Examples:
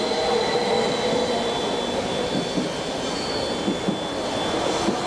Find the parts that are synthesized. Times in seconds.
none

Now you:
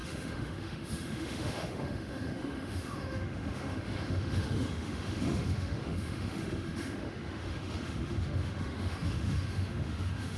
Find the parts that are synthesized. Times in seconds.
0.0-10.4 (autoencoder, DAC-VAE)

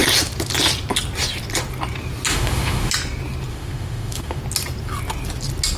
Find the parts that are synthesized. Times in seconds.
2.3-2.9 (autoencoder, DAC-VAE); 3.5-4.4

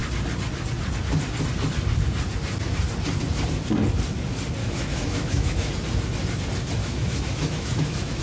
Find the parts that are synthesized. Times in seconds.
4.6-5.7 (autoencoder, DAC-VAE); 6.8-8.2

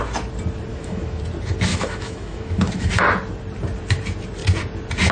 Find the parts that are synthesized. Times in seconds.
0.7-1.2 (autoencoder, DAC-VAE); 1.7-2.9

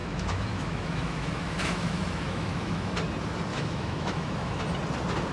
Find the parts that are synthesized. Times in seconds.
0.0-2.9 (autoencoder, DAC-VAE); 3.5-4.6

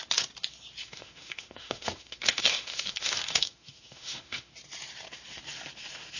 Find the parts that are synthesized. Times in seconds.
0.8-4.5 (autoencoder, DAC-VAE)